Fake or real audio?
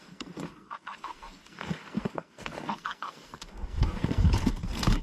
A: fake